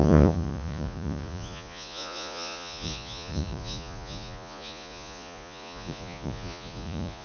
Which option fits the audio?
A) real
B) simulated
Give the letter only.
B